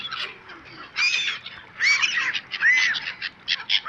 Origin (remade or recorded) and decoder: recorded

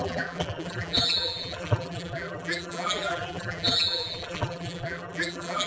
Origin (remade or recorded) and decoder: remade, vocoder, BigVGAN v2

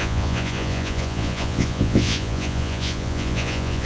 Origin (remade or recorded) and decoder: remade, vocoder, Vocos